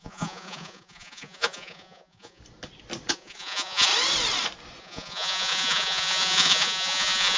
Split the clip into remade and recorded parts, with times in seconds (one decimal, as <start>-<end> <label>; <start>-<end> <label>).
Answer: 0.0-2.4 remade; 2.4-3.1 recorded; 3.1-3.9 remade; 3.9-4.8 recorded; 4.8-7.4 remade